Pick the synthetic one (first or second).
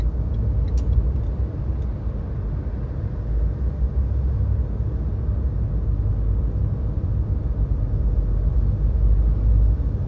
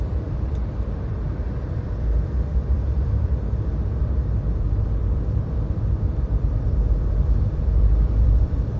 second